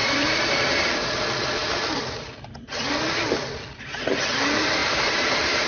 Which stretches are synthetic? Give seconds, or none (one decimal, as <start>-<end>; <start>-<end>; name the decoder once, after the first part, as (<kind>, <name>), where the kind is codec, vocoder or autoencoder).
0.0-0.9 (vocoder, BigVGAN v2); 4.8-5.7